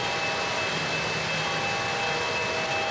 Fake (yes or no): no